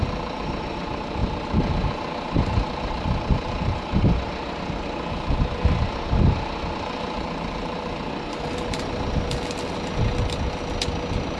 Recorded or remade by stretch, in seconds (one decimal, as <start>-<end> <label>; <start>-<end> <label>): 0.0-11.4 recorded

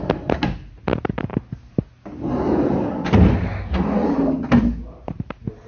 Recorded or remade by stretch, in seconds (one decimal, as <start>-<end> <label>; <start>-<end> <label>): 0.0-5.7 recorded

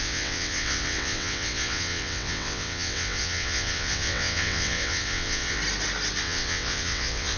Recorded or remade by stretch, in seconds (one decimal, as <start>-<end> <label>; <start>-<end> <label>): 0.0-5.6 remade; 5.6-6.2 recorded; 6.2-7.4 remade

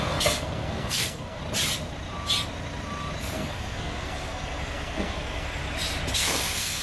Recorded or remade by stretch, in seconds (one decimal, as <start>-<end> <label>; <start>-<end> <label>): 0.0-1.4 remade; 1.4-3.2 recorded; 3.2-5.6 remade; 5.6-6.1 recorded; 6.1-6.8 remade

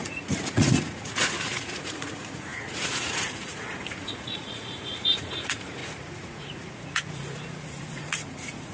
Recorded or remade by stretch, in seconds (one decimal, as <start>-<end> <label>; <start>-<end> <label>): 0.0-8.7 remade

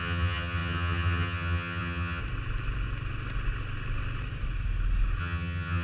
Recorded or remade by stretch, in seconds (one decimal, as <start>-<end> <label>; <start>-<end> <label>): 0.0-2.2 remade; 2.2-5.2 recorded; 5.2-5.8 remade

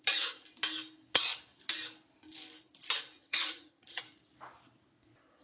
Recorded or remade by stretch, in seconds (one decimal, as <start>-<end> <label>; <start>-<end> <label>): 0.0-3.2 recorded; 3.2-4.0 remade; 4.0-5.4 recorded